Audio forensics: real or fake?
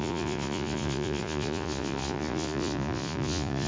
fake